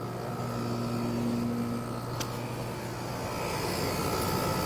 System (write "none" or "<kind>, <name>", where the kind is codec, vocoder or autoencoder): none